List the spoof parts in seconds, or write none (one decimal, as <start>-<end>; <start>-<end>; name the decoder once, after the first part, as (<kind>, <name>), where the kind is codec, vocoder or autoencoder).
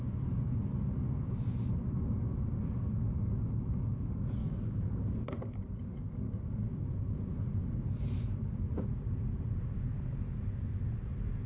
4.4-4.9 (codec, DAC)